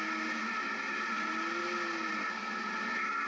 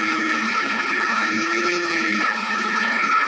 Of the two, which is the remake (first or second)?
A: second